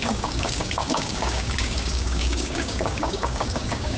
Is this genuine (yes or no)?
no